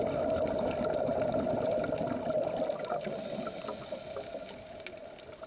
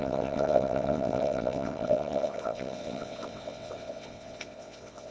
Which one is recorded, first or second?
first